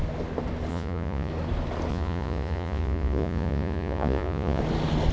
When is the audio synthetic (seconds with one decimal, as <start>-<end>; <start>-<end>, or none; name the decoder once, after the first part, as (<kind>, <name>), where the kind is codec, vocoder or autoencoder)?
0.7-1.3 (vocoder, Vocos); 1.9-4.6